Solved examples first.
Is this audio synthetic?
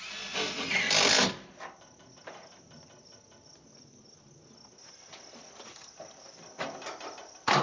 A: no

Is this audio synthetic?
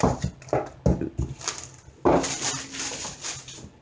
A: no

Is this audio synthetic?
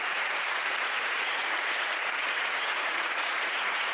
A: yes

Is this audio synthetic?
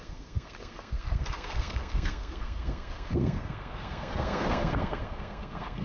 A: yes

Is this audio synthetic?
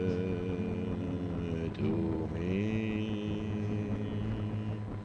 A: no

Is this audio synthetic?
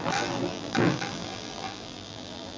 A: yes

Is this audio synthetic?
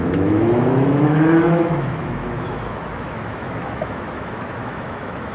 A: yes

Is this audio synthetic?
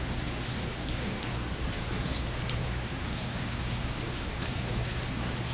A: yes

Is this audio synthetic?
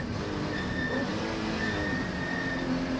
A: no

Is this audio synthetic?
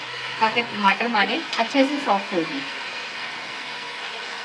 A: yes